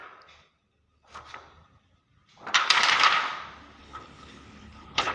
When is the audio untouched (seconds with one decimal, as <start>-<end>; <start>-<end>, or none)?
0.0-3.8